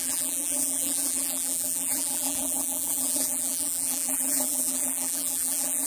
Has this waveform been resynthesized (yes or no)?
yes